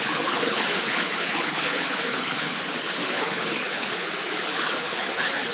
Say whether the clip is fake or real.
fake